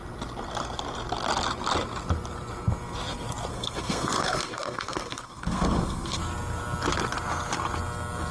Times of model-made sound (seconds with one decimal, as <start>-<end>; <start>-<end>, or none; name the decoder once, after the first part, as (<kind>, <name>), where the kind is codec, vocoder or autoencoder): 3.5-6.2 (codec, SNAC)